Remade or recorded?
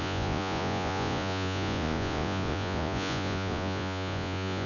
remade